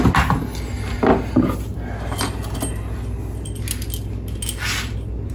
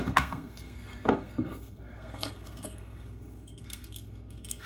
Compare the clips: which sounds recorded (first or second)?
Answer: first